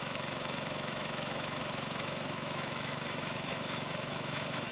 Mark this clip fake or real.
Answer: fake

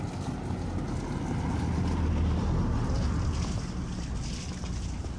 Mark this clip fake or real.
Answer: real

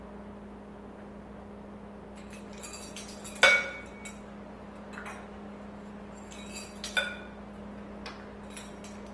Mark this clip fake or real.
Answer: real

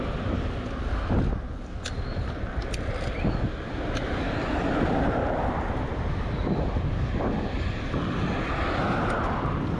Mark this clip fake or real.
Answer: real